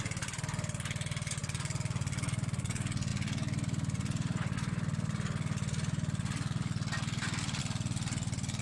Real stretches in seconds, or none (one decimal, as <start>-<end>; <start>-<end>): 0.0-8.6